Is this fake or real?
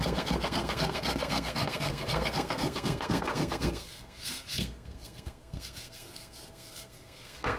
fake